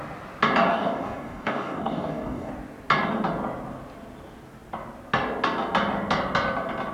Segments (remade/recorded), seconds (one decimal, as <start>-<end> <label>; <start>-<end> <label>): 0.0-0.7 recorded; 0.7-2.5 remade; 2.5-6.9 recorded